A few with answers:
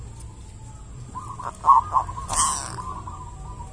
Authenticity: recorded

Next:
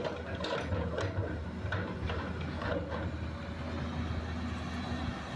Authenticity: recorded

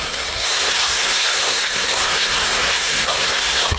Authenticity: remade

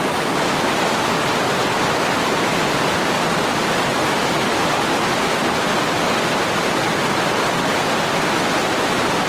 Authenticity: recorded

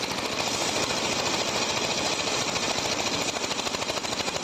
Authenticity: recorded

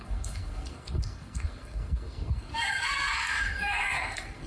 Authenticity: remade